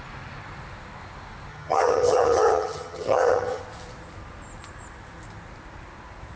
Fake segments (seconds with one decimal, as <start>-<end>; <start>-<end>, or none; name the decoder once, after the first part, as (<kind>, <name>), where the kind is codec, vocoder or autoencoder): 1.5-3.6 (vocoder, HiFi-GAN)

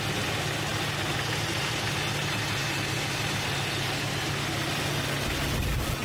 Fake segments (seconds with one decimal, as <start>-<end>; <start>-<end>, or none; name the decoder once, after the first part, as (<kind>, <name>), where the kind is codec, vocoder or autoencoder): 0.7-4.3 (vocoder, BigVGAN v2)

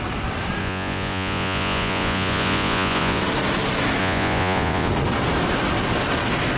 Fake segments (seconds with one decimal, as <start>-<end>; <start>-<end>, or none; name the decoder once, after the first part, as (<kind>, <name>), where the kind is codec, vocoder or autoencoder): 0.6-3.2 (vocoder, Vocos); 4.0-4.9

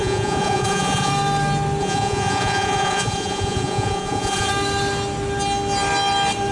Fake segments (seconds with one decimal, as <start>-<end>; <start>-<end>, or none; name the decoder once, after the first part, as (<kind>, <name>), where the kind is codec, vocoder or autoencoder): 0.0-1.1 (vocoder, Vocos); 1.8-4.5

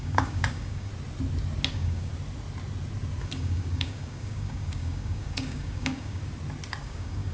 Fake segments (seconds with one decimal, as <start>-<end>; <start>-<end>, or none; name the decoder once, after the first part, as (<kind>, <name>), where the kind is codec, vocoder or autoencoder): 0.0-0.9 (codec, DAC); 1.7-2.1; 3.2-6.2; 6.8-7.3